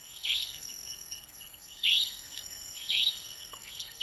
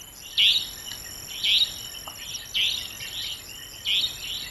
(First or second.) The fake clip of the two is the first